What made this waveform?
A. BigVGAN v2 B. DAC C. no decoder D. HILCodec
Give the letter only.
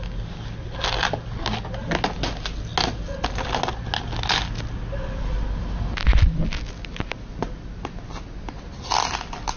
C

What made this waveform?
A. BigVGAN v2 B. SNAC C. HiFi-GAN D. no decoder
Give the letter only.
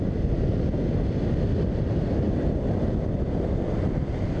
D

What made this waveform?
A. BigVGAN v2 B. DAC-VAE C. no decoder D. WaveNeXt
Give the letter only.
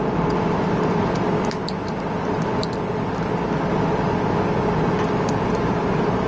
C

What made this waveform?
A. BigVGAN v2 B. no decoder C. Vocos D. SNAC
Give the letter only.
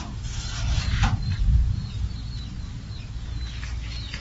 B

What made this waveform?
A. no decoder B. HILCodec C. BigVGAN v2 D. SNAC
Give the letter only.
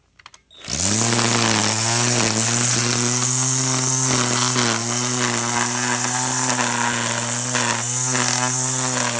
A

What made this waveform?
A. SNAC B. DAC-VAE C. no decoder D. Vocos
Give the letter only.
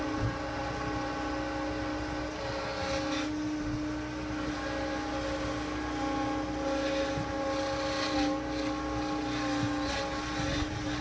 C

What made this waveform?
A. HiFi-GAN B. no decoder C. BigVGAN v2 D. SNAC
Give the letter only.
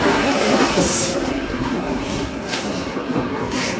D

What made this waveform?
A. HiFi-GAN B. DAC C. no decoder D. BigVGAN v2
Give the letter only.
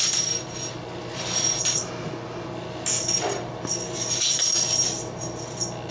C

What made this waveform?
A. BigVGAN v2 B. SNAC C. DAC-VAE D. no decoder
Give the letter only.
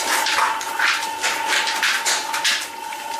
D